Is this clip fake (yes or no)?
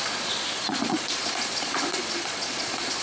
yes